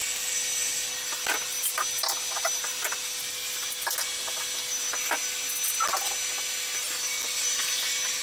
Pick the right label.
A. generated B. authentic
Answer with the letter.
B